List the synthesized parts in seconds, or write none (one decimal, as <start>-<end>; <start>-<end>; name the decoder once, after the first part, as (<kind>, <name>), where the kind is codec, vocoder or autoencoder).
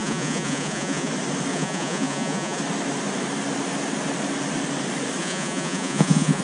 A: 0.0-1.1 (vocoder, Vocos); 1.5-2.6; 5.2-6.4